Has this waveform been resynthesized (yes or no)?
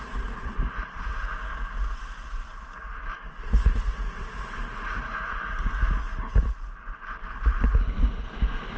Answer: no